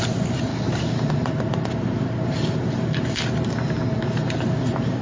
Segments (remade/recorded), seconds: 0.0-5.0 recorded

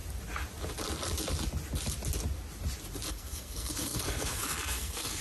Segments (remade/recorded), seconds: 0.0-3.1 recorded; 3.1-5.2 remade

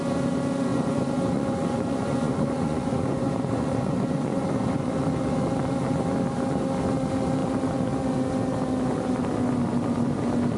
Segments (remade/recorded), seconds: 0.0-0.7 recorded; 0.7-4.9 remade; 4.9-10.6 recorded

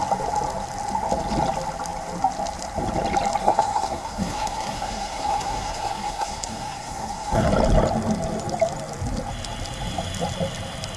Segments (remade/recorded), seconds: 0.0-3.4 recorded; 3.4-7.5 remade; 7.5-11.0 recorded

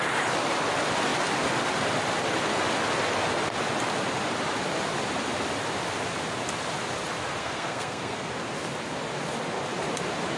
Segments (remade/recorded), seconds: 0.0-7.4 recorded; 7.4-8.3 remade; 8.3-10.4 recorded

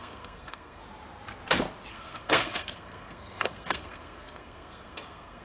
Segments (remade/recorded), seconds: 0.0-0.8 remade; 0.8-1.9 recorded; 1.9-5.4 remade